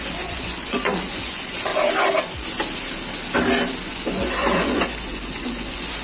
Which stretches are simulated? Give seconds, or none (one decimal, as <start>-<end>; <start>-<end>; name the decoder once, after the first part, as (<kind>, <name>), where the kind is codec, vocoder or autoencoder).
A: 0.0-1.7 (vocoder, Vocos); 3.8-6.0